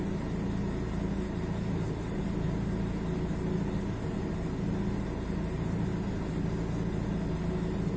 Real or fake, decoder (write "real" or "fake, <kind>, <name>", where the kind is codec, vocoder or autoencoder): real